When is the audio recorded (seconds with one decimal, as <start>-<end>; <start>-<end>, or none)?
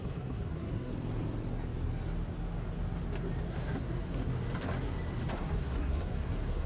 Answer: 0.9-3.4; 4.3-5.3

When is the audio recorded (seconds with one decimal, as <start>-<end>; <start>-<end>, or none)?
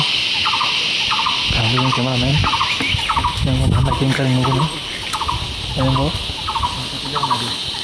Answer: 0.0-2.3; 2.8-7.8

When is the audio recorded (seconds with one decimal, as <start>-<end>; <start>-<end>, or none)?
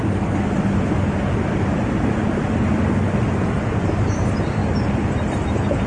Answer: 0.0-5.9